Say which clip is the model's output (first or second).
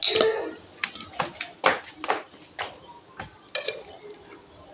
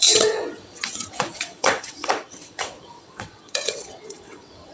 second